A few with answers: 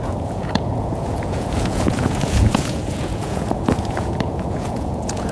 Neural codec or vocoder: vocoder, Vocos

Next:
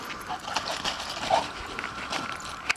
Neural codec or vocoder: none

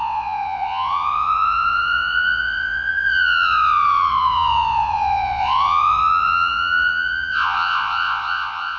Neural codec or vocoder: vocoder, Vocos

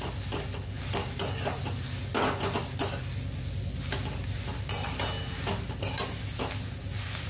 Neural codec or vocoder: none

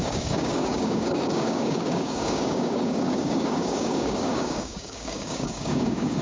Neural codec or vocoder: codec, DAC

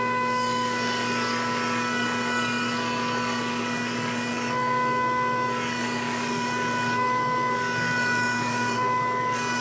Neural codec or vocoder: codec, DAC